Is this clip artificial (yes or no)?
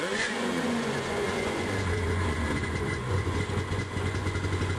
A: yes